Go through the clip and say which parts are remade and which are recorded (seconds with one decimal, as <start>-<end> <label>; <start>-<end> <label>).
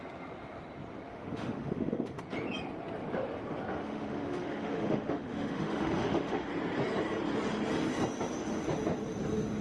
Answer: 0.0-1.1 recorded; 1.1-2.2 remade; 2.2-3.7 recorded; 3.7-6.5 remade; 6.5-9.6 recorded